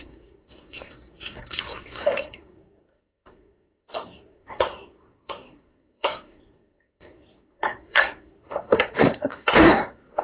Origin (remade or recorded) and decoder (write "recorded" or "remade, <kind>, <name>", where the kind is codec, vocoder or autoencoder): remade, codec, SNAC